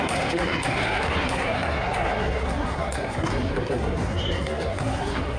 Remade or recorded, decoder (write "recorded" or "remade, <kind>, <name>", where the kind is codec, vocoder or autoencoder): remade, codec, SNAC